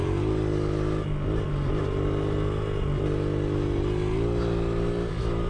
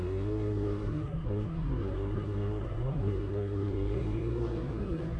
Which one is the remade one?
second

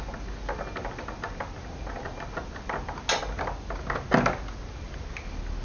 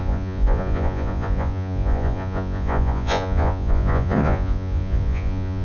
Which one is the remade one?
second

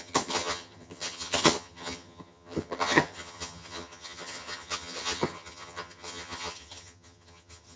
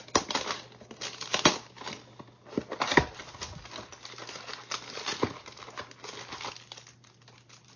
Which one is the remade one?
first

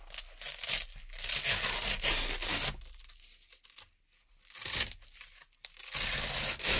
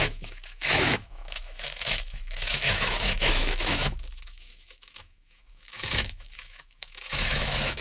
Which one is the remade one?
second